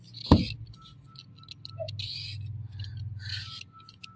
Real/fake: real